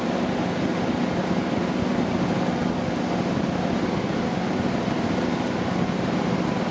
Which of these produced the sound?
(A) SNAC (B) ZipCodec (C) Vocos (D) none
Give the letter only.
D